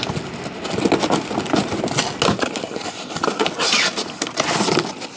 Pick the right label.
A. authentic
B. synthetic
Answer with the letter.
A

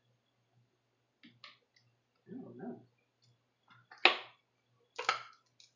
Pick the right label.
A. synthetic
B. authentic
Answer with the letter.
B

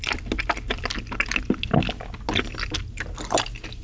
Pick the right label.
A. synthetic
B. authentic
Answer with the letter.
B